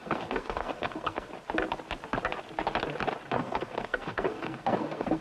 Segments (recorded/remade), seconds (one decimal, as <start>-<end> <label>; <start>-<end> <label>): 0.0-1.3 remade; 1.3-3.3 recorded; 3.3-5.2 remade